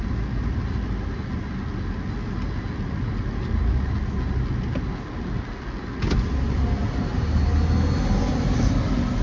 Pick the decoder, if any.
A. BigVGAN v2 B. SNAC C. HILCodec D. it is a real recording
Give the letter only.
D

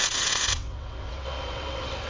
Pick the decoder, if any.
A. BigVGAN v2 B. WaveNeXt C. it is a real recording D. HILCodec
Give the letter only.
B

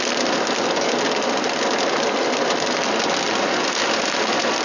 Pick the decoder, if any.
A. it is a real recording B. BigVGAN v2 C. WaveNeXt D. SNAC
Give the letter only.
A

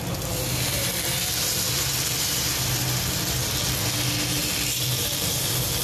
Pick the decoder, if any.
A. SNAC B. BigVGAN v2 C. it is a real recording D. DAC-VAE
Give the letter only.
C